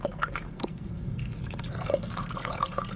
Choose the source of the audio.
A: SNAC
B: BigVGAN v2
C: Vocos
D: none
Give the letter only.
A